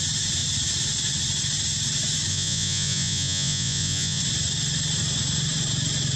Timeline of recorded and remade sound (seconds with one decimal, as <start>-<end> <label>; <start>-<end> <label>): 0.0-2.3 recorded; 2.3-4.2 remade; 4.2-6.2 recorded